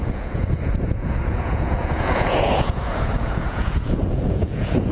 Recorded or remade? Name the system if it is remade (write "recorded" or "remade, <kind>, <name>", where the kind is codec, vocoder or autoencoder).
remade, vocoder, Vocos